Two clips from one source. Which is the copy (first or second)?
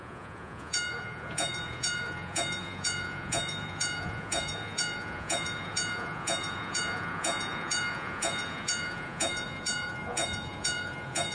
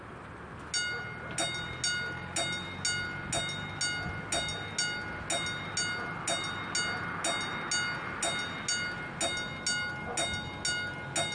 first